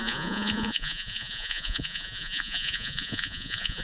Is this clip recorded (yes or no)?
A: no